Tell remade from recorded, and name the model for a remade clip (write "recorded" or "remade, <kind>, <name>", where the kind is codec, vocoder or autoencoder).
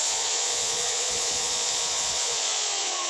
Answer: remade, vocoder, Vocos